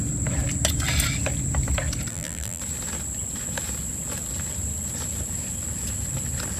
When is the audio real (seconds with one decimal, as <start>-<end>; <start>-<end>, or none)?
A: 0.0-2.1; 2.6-6.6